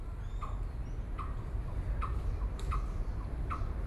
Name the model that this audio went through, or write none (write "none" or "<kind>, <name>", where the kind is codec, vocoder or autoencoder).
none